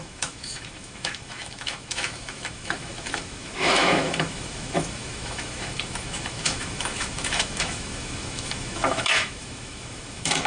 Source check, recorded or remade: remade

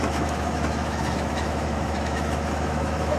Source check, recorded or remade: remade